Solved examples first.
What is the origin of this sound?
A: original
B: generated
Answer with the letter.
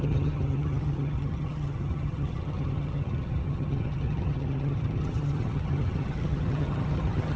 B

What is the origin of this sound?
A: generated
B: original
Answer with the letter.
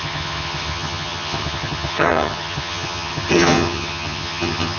A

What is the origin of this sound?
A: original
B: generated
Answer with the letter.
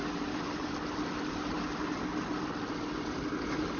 A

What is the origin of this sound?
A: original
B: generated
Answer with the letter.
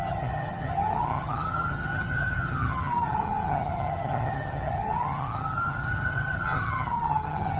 B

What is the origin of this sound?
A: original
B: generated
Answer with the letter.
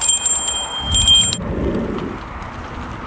A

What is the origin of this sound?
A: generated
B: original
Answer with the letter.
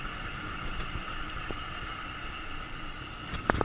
B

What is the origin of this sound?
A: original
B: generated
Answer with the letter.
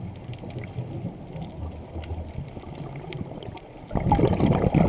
A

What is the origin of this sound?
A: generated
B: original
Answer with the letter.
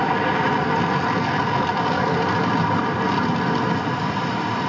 B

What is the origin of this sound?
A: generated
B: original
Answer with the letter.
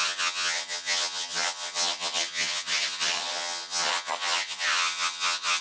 A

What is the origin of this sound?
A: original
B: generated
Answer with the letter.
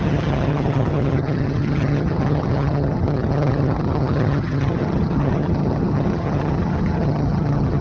B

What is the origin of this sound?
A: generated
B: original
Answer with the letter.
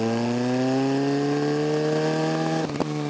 B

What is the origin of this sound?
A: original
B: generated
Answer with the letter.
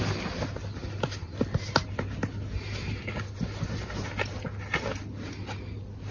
A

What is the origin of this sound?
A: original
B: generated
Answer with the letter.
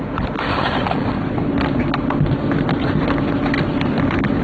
A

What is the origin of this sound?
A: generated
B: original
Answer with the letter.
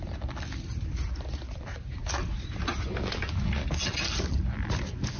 B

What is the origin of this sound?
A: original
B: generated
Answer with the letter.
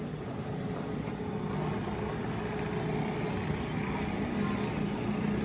A